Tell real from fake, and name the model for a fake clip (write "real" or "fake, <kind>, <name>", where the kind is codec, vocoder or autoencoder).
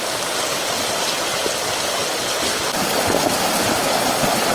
real